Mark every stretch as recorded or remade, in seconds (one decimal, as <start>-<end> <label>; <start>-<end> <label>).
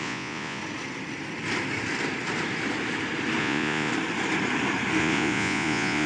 0.0-0.6 remade; 0.6-3.4 recorded; 3.4-3.9 remade; 3.9-5.0 recorded; 5.0-6.1 remade